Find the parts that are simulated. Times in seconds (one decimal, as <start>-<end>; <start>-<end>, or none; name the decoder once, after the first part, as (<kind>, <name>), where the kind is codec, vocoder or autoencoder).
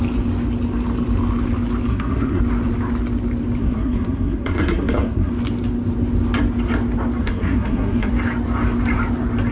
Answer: 1.9-2.4 (codec, SNAC); 3.6-5.3; 7.2-8.1